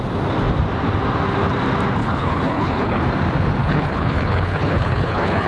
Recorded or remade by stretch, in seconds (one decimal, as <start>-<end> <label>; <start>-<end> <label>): 0.0-2.0 recorded; 2.0-3.0 remade; 3.0-3.6 recorded; 3.6-5.5 remade